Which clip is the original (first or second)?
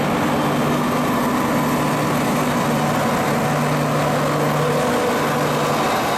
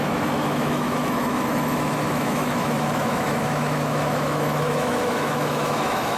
first